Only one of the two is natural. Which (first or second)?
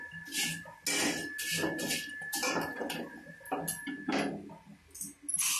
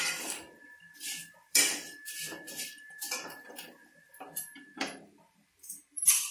first